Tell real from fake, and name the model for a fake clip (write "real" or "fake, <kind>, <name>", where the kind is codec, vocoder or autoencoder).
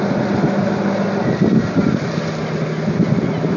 real